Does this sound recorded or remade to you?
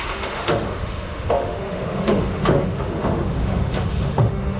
remade